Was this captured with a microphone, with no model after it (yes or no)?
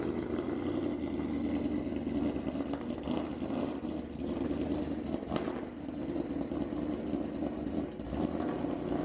yes